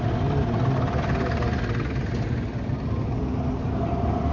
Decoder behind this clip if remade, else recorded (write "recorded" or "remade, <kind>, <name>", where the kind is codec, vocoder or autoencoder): recorded